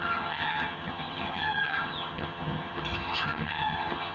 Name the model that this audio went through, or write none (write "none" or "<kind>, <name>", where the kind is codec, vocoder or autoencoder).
vocoder, HiFi-GAN